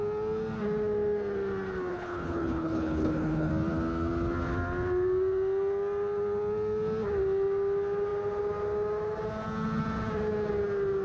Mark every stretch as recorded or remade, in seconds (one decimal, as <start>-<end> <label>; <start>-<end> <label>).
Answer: 0.0-1.9 recorded; 1.9-3.5 remade; 3.5-11.0 recorded